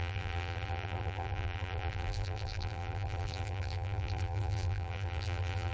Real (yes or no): no